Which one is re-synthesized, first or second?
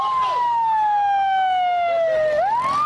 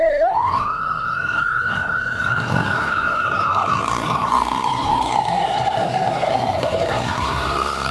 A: second